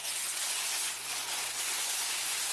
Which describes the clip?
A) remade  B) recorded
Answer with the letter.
A